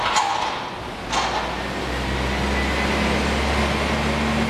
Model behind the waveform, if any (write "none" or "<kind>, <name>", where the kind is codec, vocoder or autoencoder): none